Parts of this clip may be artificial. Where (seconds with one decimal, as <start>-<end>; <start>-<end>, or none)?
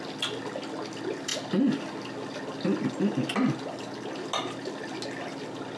none